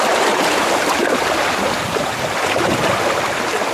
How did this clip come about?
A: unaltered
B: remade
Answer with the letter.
A